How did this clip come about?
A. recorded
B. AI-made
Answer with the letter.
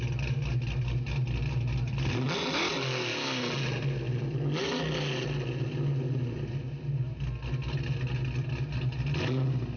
A